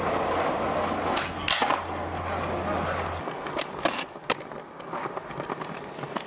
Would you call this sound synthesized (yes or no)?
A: no